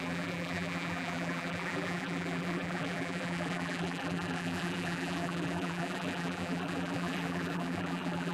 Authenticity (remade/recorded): remade